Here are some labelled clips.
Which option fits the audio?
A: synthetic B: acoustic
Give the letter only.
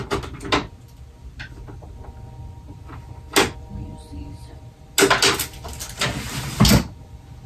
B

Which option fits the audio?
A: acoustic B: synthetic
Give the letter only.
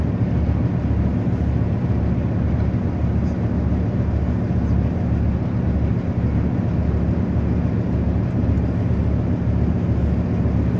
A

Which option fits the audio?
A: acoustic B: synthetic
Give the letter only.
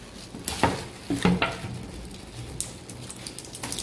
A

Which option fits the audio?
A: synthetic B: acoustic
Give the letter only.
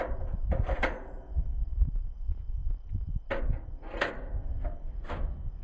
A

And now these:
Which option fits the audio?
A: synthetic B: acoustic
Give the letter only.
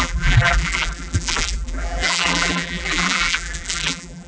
A